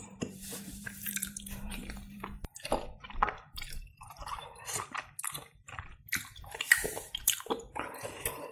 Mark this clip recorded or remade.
remade